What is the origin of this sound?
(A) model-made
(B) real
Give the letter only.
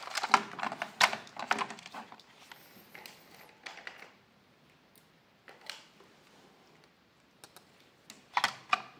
B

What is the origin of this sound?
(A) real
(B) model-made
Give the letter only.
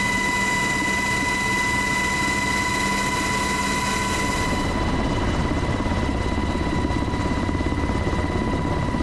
A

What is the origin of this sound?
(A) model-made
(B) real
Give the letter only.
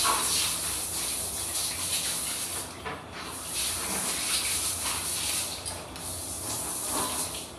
B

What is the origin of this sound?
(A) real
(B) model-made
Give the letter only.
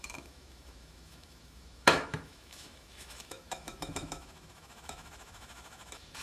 B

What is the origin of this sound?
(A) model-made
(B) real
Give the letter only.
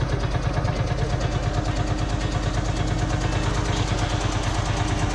B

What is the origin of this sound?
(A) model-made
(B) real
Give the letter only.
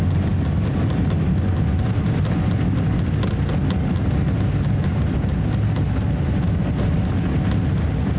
B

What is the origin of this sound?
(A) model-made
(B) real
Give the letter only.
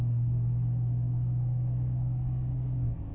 A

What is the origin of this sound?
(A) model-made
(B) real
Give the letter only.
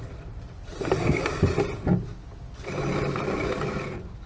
B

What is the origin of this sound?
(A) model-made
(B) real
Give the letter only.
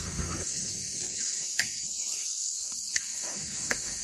A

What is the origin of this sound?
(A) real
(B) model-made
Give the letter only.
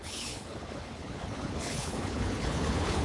B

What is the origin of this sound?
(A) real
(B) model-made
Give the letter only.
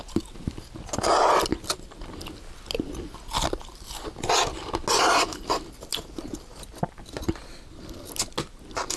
A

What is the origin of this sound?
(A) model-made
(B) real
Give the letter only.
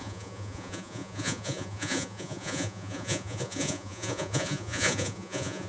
A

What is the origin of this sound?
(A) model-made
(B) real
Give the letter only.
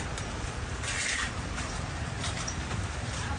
A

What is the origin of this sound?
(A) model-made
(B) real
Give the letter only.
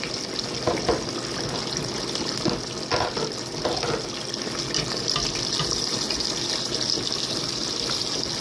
B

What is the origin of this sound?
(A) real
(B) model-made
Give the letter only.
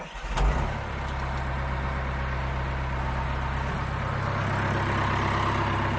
A